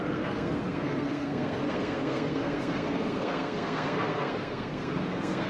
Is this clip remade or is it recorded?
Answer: remade